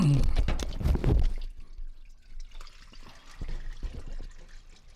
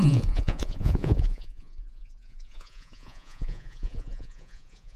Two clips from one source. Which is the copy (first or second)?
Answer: second